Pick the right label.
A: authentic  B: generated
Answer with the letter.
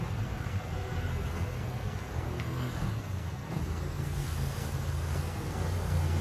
B